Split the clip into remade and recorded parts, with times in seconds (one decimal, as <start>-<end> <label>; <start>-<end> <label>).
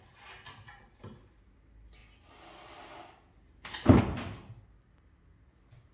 0.0-5.9 recorded